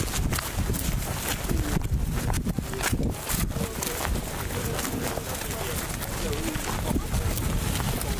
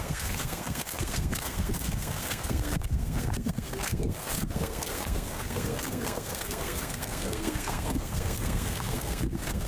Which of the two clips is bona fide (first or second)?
first